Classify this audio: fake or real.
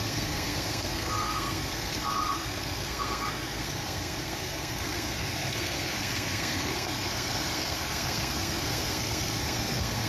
fake